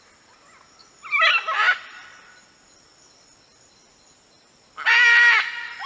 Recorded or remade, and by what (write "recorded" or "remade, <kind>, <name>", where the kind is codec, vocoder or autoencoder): recorded